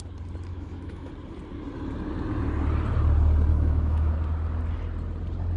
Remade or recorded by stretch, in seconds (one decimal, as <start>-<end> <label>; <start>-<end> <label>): 0.0-0.5 recorded; 0.5-1.1 remade; 1.1-3.5 recorded; 3.5-4.1 remade; 4.1-5.6 recorded